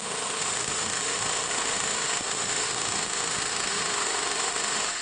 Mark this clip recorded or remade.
remade